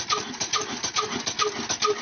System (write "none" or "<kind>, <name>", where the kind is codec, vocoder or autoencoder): none